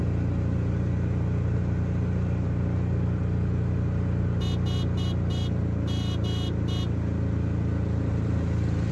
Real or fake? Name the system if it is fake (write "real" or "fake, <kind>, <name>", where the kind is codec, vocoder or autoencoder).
real